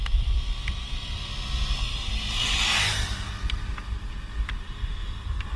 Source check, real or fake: fake